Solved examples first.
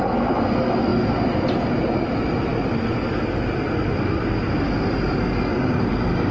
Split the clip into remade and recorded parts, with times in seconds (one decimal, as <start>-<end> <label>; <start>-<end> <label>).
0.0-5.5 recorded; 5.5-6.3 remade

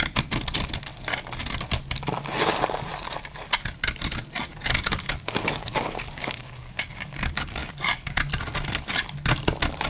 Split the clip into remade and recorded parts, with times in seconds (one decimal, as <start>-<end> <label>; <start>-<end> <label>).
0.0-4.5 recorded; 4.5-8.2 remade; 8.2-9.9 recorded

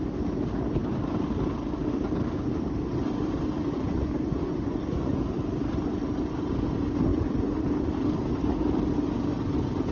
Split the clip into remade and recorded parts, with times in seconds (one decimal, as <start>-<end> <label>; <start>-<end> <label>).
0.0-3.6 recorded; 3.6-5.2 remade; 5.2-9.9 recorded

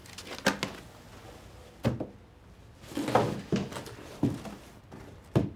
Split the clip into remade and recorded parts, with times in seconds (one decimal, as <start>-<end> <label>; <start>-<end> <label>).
0.0-5.6 recorded

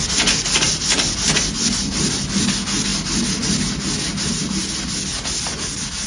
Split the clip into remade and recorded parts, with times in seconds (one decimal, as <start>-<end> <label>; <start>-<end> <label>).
0.0-6.1 recorded

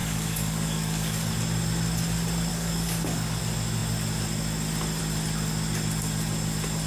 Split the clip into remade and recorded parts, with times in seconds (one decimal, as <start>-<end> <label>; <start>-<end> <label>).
0.0-1.3 remade; 1.3-2.5 recorded; 2.5-3.4 remade; 3.4-6.9 recorded

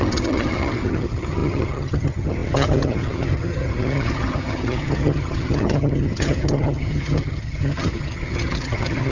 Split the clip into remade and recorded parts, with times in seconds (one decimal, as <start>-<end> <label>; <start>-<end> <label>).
0.0-9.1 remade

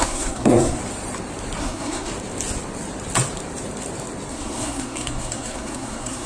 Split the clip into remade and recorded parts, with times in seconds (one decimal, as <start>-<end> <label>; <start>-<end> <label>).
0.0-0.8 remade; 0.8-1.6 recorded; 1.6-2.1 remade; 2.1-4.3 recorded; 4.3-6.3 remade